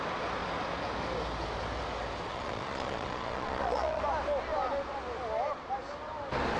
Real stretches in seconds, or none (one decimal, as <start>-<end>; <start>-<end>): 0.0-2.3; 4.0-6.6